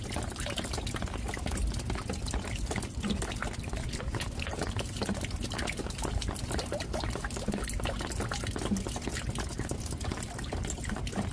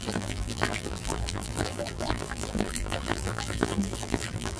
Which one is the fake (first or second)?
second